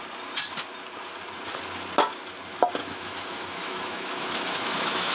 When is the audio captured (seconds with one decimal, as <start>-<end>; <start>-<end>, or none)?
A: 0.0-2.8